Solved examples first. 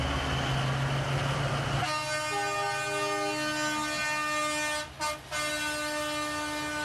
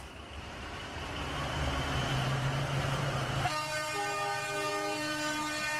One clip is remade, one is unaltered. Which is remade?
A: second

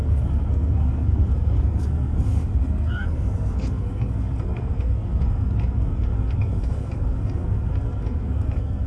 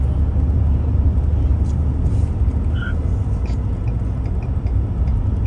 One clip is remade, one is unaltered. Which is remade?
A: first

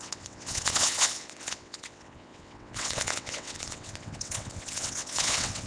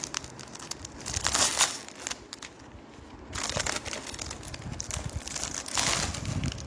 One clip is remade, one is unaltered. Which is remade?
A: first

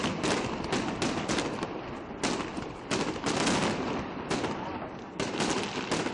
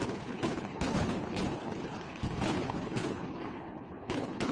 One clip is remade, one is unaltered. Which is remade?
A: second